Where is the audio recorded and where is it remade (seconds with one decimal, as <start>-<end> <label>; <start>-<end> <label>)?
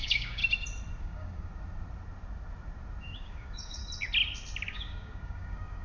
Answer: 0.0-0.4 remade; 0.4-1.0 recorded; 1.0-1.5 remade; 1.5-3.0 recorded; 3.0-3.8 remade; 3.8-4.7 recorded; 4.7-5.8 remade